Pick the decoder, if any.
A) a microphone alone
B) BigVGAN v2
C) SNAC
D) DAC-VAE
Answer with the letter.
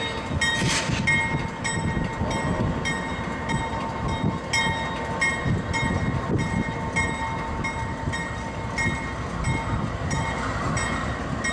A